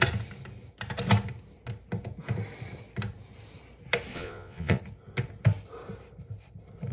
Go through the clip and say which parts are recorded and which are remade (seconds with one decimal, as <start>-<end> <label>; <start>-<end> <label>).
0.0-4.1 recorded; 4.1-4.8 remade; 4.8-6.9 recorded